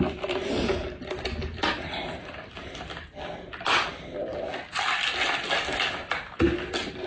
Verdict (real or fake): real